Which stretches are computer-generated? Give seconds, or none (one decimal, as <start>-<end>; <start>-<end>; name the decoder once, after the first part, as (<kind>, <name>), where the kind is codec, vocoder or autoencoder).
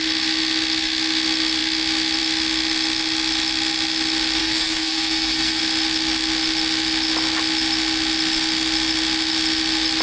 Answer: 4.4-5.6 (codec, SNAC)